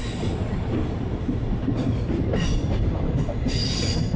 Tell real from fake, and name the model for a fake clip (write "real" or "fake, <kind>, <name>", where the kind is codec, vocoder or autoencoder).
real